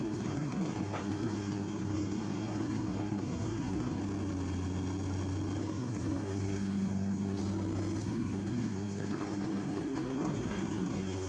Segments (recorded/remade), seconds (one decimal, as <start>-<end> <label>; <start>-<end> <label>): 0.0-4.0 remade; 4.0-5.6 recorded; 5.6-7.4 remade; 7.4-8.0 recorded; 8.0-11.3 remade